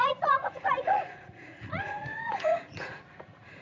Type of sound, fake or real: fake